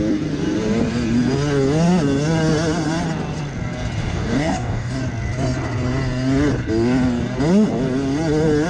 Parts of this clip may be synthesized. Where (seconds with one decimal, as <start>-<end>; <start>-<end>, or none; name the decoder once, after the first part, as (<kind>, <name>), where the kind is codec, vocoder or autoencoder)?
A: 4.0-5.0 (codec, DAC)